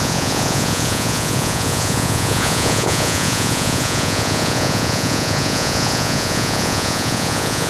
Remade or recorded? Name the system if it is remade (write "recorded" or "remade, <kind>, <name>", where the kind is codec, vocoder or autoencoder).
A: remade, vocoder, Vocos